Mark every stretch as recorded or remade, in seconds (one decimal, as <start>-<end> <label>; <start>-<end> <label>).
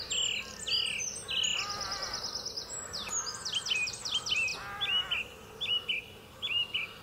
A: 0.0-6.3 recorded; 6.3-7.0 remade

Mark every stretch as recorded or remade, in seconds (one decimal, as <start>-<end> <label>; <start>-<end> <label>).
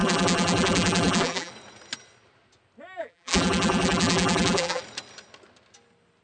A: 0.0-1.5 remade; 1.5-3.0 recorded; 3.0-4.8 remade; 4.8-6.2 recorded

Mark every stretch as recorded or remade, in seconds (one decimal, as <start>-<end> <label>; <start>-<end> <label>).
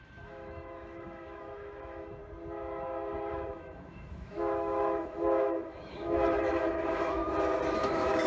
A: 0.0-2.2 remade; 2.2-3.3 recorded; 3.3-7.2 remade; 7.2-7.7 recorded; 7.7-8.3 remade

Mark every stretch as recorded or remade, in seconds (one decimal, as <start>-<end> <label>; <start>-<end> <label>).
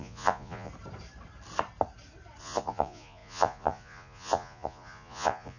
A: 0.0-0.7 remade; 0.7-2.4 recorded; 2.4-5.6 remade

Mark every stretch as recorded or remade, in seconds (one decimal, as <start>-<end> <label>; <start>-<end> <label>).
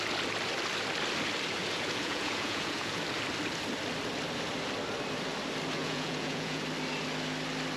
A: 0.0-1.6 recorded; 1.6-3.0 remade; 3.0-5.8 recorded; 5.8-6.6 remade; 6.6-7.8 recorded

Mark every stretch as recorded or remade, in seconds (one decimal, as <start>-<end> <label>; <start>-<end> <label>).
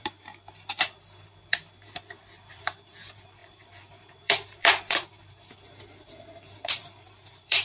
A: 0.0-7.6 remade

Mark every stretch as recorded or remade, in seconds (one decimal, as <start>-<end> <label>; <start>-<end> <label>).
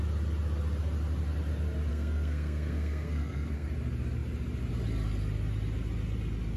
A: 0.0-1.9 recorded; 1.9-3.7 remade; 3.7-6.6 recorded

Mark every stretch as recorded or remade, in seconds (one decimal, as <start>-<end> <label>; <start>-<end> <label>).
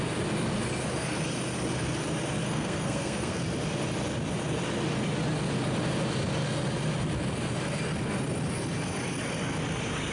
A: 0.0-2.4 recorded; 2.4-3.4 remade; 3.4-10.1 recorded